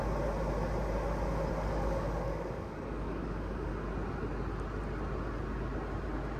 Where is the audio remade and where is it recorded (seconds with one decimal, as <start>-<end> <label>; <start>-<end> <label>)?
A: 0.0-1.5 recorded; 1.5-3.7 remade; 3.7-6.4 recorded